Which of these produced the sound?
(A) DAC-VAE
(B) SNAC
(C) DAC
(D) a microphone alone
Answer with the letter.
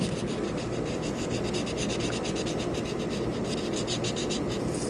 D